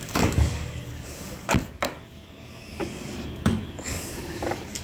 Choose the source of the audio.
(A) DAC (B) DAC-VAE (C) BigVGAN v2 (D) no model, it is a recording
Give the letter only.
A